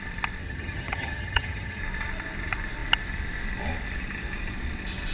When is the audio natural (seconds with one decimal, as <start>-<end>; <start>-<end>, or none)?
0.0-0.4; 1.8-5.1